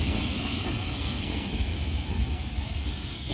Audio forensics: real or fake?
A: fake